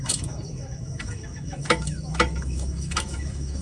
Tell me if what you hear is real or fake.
fake